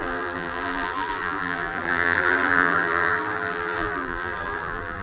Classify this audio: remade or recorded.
remade